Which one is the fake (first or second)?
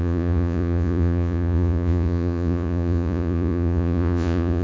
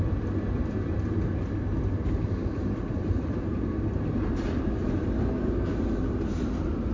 first